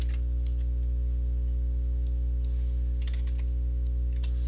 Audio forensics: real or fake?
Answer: real